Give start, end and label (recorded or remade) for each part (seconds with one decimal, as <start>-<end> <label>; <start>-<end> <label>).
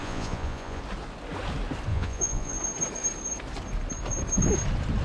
0.0-0.8 remade; 0.8-1.9 recorded; 1.9-2.6 remade; 2.6-5.0 recorded